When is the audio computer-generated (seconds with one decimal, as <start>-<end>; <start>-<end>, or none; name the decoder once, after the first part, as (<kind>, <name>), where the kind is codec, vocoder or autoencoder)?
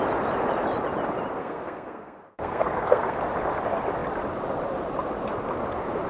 1.4-3.2 (codec, SNAC)